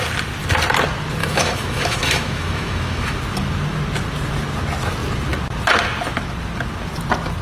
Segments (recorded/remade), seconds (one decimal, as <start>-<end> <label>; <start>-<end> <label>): 0.0-1.2 recorded; 1.2-3.2 remade; 3.2-7.4 recorded